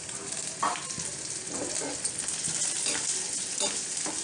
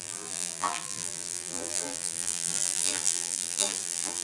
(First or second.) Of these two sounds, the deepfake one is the second